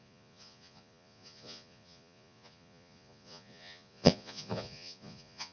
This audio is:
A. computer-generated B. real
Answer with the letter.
A